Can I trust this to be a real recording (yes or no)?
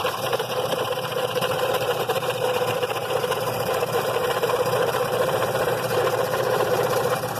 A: no